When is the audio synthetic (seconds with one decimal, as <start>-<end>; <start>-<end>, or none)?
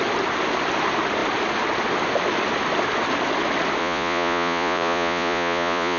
3.8-6.0